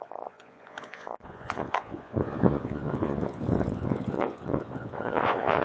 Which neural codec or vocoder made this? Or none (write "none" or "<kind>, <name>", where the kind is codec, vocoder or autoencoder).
vocoder, Vocos